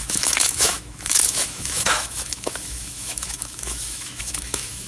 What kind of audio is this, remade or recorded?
remade